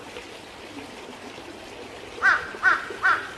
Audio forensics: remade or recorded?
recorded